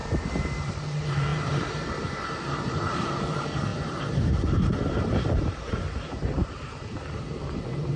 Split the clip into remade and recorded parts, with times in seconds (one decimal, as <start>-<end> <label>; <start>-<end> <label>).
0.0-0.7 recorded; 0.7-8.0 remade